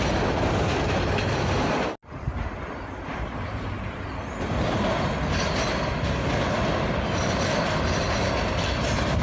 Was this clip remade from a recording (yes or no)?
no